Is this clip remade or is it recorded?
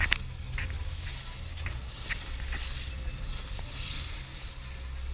recorded